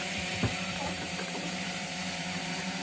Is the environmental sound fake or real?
fake